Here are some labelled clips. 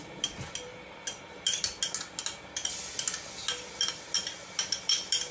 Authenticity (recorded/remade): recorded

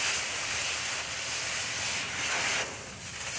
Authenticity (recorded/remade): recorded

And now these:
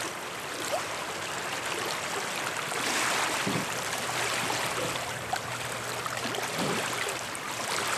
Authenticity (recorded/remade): recorded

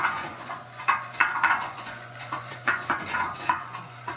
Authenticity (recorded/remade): remade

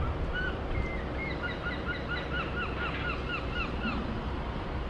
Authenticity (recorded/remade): recorded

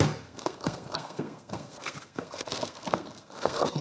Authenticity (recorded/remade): remade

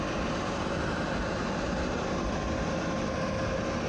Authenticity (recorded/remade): recorded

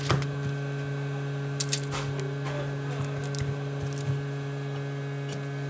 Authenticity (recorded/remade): recorded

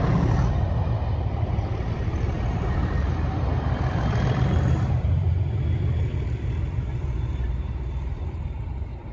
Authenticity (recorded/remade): remade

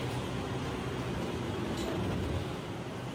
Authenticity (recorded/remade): remade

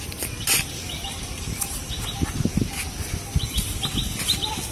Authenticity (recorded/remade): recorded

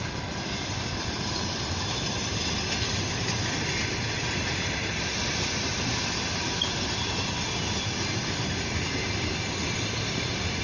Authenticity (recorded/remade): remade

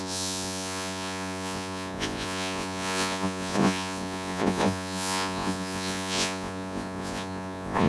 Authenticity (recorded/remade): remade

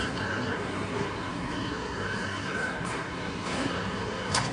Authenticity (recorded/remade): remade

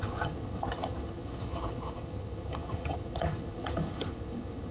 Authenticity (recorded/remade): remade